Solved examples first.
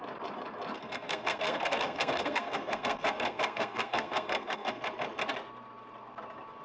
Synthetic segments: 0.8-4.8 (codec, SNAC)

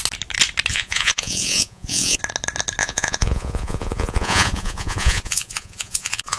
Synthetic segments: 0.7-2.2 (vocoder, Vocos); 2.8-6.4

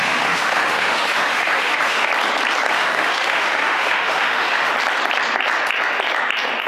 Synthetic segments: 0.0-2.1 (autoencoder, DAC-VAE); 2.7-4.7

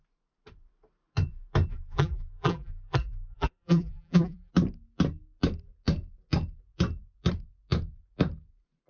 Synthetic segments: 1.7-4.5 (vocoder, BigVGAN v2)